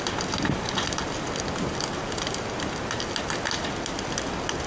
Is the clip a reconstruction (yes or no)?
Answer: no